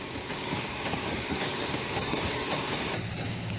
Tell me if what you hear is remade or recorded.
remade